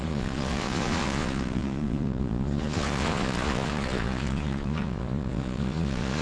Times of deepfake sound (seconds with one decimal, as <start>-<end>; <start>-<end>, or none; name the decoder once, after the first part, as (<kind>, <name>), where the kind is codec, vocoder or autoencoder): 0.0-6.2 (vocoder, Vocos)